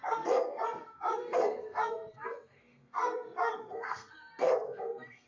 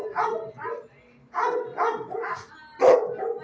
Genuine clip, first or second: second